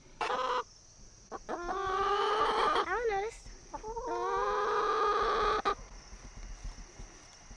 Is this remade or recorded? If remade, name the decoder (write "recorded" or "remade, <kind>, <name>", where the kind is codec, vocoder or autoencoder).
recorded